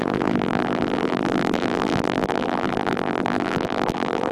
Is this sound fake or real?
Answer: fake